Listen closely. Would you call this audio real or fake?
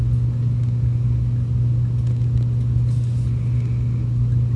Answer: real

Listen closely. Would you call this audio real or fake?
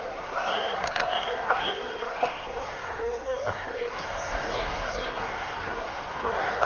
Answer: fake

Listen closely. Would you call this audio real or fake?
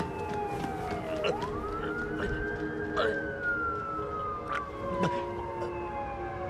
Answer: real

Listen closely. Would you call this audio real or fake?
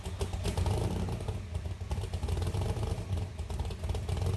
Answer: real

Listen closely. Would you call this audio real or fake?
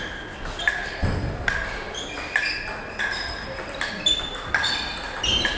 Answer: real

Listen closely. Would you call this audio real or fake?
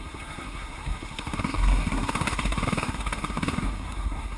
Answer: fake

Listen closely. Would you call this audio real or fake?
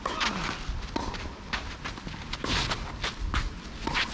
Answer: real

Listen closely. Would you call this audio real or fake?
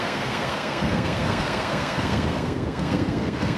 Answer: fake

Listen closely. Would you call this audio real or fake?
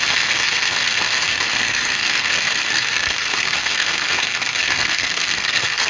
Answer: fake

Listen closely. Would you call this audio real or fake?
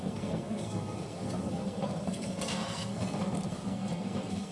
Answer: fake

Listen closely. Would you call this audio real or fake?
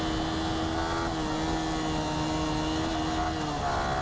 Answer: real